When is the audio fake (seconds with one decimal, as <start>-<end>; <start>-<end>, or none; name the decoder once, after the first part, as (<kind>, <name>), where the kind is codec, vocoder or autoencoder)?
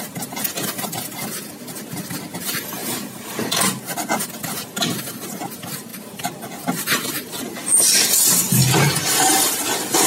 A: 2.8-4.3 (vocoder, BigVGAN v2); 5.9-6.5